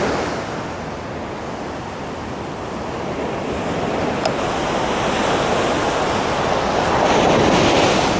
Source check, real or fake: real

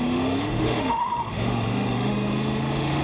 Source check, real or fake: fake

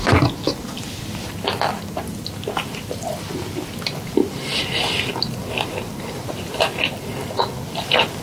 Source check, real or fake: real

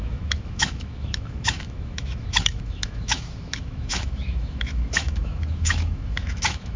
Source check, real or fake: fake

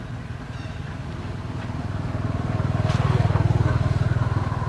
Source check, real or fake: real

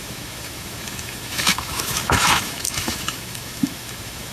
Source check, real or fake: fake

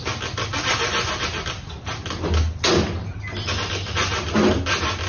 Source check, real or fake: real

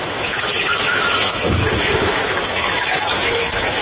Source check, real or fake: fake